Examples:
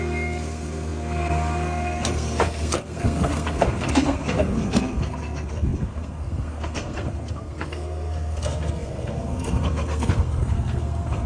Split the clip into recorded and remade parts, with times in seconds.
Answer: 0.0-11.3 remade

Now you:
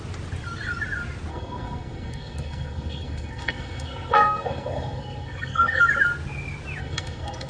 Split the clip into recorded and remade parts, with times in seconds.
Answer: 0.0-1.3 recorded; 1.3-5.8 remade; 5.8-6.8 recorded; 6.8-7.5 remade